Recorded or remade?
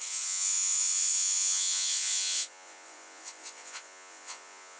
remade